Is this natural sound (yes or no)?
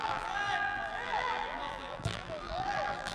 no